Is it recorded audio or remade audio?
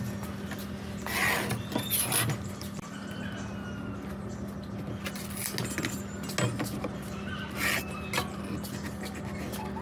recorded